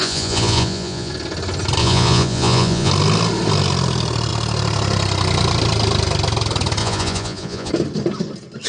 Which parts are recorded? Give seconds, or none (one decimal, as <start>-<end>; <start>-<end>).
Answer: 1.1-1.8; 2.9-6.8; 7.7-8.7